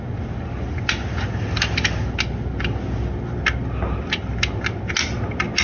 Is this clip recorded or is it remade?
recorded